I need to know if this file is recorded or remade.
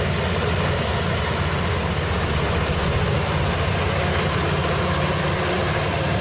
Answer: recorded